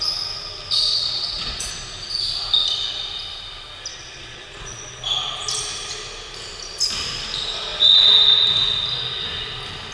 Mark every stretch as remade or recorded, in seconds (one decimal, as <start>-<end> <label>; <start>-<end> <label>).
0.0-0.9 recorded; 0.9-1.7 remade; 1.7-3.9 recorded; 3.9-5.0 remade; 5.0-9.9 recorded